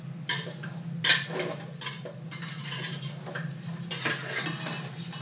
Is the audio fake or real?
real